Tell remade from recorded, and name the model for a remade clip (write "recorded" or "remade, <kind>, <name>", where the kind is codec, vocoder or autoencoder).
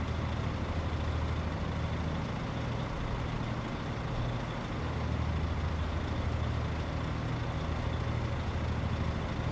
recorded